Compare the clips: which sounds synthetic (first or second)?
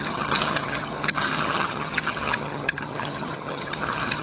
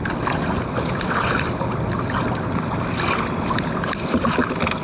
first